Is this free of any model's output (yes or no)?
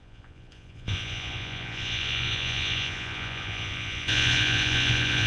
no